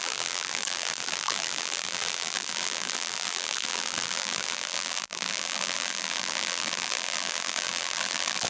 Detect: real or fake fake